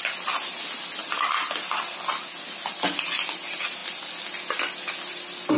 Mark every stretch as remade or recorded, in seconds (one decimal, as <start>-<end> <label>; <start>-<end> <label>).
0.0-5.6 recorded